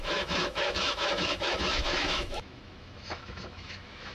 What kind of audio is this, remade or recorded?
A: remade